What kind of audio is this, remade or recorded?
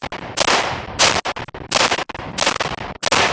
recorded